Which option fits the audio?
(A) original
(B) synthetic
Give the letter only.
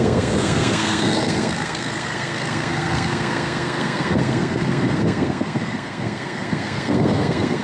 B